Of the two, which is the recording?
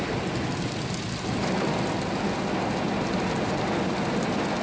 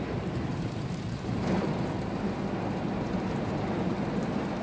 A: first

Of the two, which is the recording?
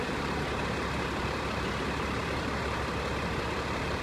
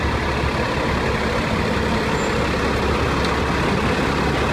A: second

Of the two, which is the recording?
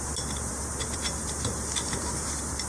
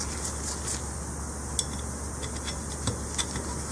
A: second